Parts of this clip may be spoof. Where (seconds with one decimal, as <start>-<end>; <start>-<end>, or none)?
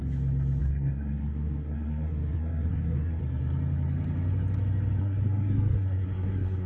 0.6-3.2; 5.0-6.7